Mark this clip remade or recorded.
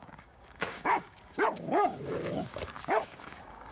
remade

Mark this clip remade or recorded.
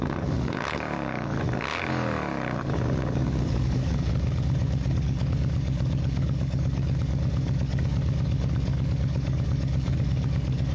remade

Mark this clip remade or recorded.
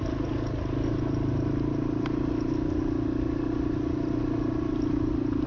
recorded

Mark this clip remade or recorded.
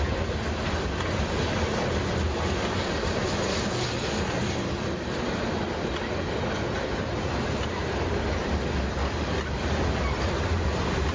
recorded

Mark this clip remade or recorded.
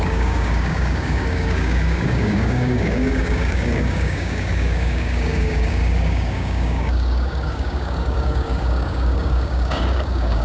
remade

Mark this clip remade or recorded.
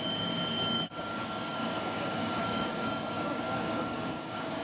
remade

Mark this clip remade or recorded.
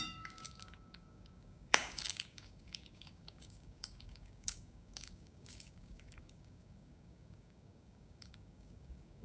remade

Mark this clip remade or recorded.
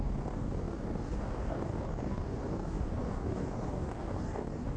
remade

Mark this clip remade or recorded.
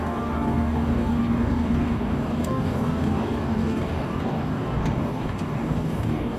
remade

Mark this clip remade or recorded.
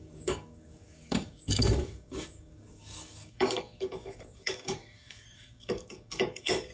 remade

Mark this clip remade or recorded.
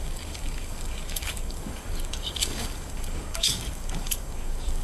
remade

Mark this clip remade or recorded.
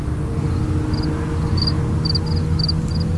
recorded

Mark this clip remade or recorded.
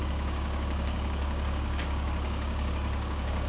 remade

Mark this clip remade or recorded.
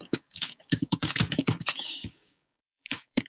remade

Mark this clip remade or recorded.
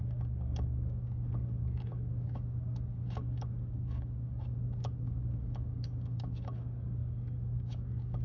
remade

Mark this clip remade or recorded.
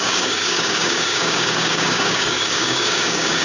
remade